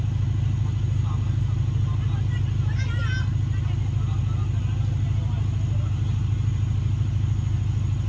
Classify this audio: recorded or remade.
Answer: recorded